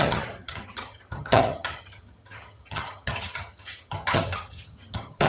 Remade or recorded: remade